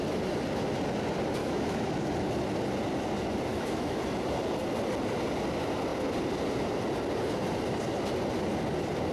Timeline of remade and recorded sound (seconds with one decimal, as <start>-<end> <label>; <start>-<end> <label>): 0.0-1.4 recorded; 1.4-1.9 remade; 1.9-3.5 recorded; 3.5-4.0 remade; 4.0-9.1 recorded